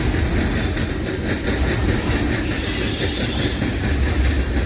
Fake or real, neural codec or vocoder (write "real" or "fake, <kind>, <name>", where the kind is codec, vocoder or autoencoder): real